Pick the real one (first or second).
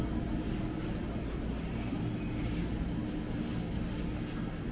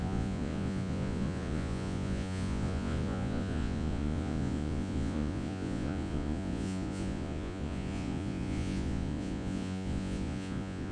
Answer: first